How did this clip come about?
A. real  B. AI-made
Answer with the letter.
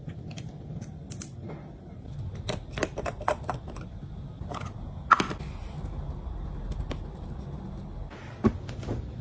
A